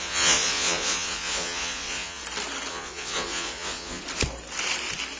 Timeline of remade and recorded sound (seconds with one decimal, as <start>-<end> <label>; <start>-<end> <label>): 0.0-2.2 remade; 2.2-2.7 recorded; 2.7-4.0 remade; 4.0-5.2 recorded